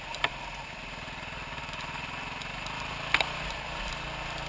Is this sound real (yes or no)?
yes